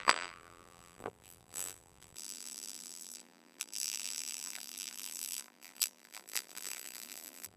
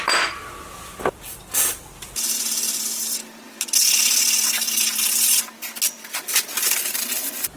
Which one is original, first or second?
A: second